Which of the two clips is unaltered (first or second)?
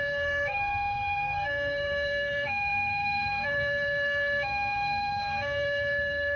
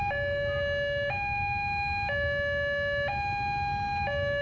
second